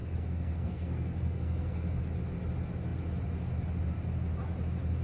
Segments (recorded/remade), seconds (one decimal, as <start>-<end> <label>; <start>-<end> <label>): 0.0-2.0 remade; 2.0-5.0 recorded